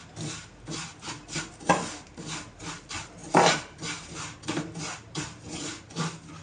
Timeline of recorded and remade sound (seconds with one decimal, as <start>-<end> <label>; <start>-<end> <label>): 0.0-6.4 recorded

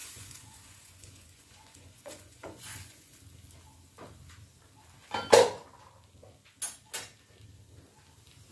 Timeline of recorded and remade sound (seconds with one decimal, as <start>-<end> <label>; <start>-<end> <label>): 0.0-3.2 remade; 3.2-8.5 recorded

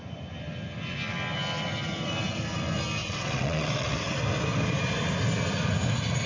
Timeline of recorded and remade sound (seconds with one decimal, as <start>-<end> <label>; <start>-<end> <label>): 0.0-3.0 recorded; 3.0-4.2 remade; 4.2-6.3 recorded